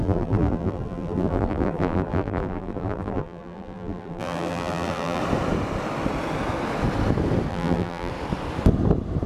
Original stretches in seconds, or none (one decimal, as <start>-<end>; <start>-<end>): 5.2-7.5; 8.1-9.3